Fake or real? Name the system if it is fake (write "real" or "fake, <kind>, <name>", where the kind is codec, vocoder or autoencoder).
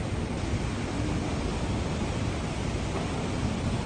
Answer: real